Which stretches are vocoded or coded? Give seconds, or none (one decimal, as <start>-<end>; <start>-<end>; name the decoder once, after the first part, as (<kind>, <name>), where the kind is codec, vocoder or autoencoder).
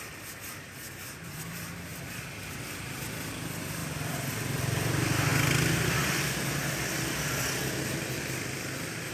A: 1.9-3.3 (vocoder, BigVGAN v2); 3.8-4.6